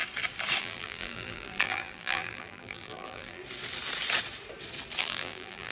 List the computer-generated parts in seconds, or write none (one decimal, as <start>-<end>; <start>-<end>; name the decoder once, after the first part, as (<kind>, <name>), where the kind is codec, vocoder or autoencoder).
0.6-3.4 (vocoder, BigVGAN v2); 5.0-5.7